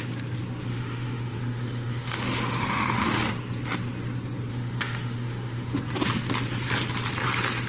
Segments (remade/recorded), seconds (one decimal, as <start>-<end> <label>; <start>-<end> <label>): 0.0-0.7 recorded; 0.7-3.2 remade; 3.2-4.5 recorded; 4.5-5.8 remade; 5.8-7.7 recorded